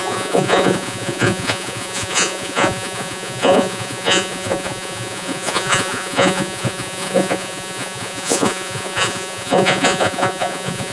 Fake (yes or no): yes